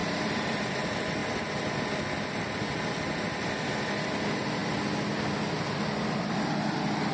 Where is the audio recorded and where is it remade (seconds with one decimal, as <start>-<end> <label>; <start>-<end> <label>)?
0.0-0.6 remade; 0.6-7.1 recorded